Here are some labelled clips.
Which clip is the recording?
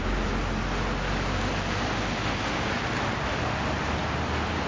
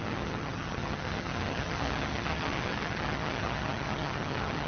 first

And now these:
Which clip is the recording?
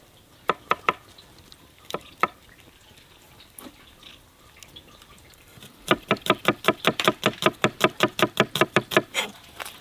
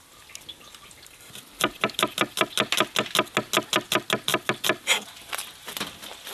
second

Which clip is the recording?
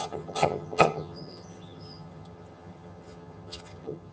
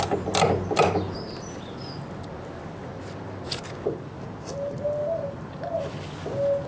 second